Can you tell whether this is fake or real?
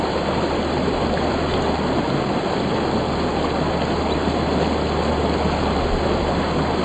real